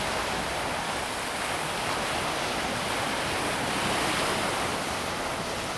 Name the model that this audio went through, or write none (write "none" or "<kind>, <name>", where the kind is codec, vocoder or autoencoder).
vocoder, BigVGAN v2